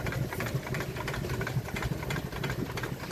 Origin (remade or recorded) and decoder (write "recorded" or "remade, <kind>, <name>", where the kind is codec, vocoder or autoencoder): recorded